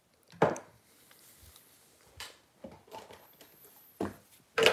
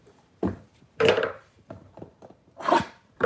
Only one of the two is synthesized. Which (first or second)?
second